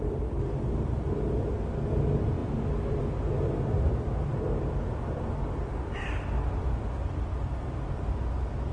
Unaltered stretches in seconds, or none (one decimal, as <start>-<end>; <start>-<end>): 0.0-8.7

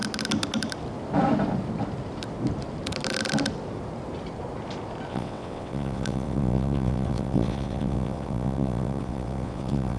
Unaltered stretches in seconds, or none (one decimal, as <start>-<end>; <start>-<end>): 0.0-5.1

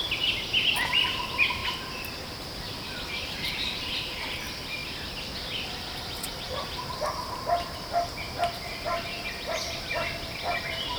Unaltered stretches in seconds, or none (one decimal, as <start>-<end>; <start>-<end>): 1.6-2.4; 4.8-9.9

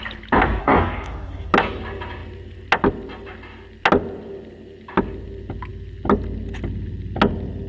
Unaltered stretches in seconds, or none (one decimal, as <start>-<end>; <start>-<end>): 0.0-0.6; 1.5-7.7

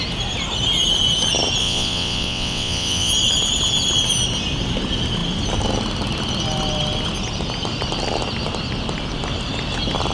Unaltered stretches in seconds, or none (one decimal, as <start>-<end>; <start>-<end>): 0.0-1.6; 3.1-10.1

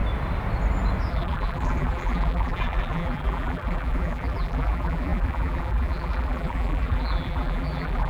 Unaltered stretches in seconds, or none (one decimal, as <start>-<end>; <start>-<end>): 0.0-1.1